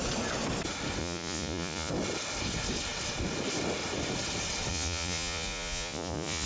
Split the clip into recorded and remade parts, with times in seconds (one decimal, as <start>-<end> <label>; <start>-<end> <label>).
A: 0.0-1.0 recorded; 1.0-1.9 remade; 1.9-4.7 recorded; 4.7-6.5 remade